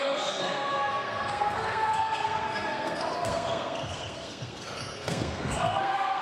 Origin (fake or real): fake